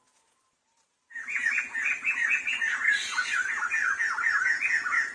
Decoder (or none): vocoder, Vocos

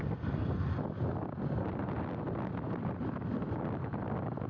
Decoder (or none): none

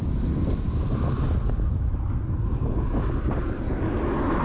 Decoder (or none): none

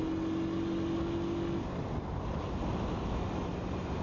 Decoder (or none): none